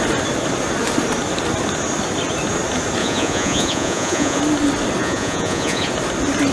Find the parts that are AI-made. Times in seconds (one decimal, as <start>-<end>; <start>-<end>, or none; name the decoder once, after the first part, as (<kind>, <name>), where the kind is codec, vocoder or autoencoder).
3.0-4.4 (vocoder, Vocos); 5.0-5.9